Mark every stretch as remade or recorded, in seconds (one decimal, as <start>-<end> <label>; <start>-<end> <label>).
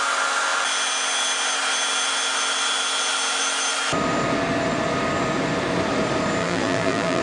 0.0-6.4 recorded; 6.4-7.2 remade